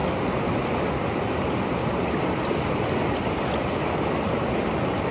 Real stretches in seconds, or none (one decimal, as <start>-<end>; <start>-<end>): 0.0-5.1